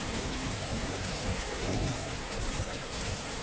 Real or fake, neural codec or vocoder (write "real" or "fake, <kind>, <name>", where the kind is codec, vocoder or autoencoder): fake, codec, SNAC